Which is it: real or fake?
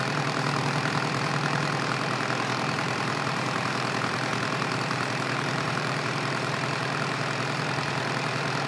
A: fake